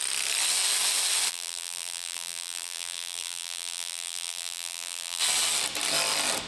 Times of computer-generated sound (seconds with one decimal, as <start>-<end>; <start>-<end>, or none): 1.3-5.2